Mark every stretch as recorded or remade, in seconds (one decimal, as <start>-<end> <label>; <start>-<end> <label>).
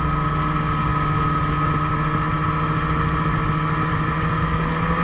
0.0-5.0 recorded